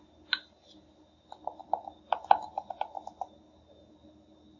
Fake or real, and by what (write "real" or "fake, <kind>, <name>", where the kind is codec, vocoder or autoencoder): real